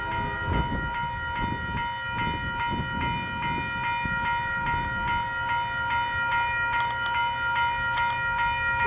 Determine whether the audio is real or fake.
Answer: real